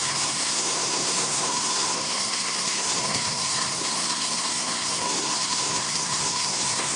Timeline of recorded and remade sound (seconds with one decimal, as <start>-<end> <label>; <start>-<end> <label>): 0.0-7.0 remade